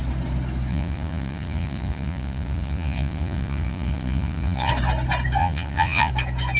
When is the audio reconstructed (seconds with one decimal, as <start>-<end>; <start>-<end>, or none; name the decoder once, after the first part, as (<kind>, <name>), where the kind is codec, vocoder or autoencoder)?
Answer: 0.7-4.7 (vocoder, Vocos); 5.4-6.1